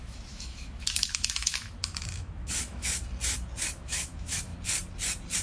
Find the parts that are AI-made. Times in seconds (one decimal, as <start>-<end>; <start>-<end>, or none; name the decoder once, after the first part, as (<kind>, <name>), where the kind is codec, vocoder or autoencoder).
0.0-3.0 (autoencoder, DAC-VAE); 3.7-4.5